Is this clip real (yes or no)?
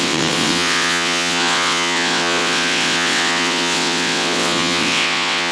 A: no